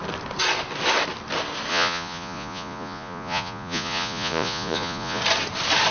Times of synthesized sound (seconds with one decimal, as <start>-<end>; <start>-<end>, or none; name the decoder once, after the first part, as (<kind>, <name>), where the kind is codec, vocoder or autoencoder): 1.7-5.2 (vocoder, Vocos)